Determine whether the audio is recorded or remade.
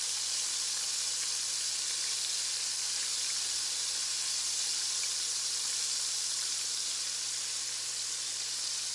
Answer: recorded